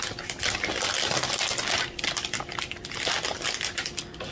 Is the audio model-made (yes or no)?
no